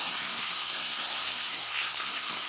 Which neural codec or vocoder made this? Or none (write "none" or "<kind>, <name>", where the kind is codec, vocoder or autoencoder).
codec, SNAC